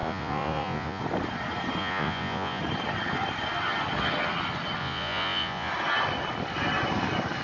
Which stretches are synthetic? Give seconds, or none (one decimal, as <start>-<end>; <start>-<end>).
0.0-1.0; 1.8-2.6; 4.8-5.7